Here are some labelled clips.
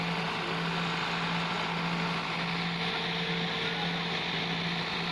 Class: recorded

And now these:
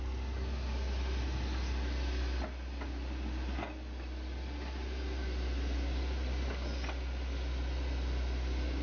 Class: recorded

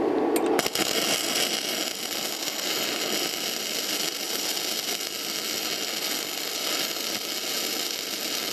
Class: recorded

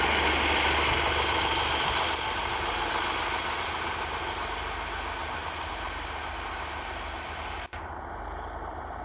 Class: recorded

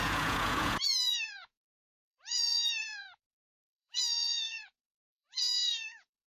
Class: remade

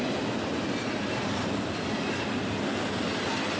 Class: recorded